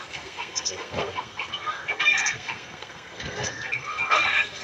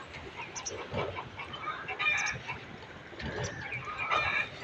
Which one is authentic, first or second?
second